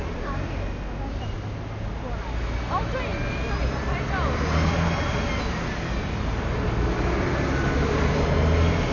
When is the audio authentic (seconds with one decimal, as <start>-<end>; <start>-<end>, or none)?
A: 0.0-8.9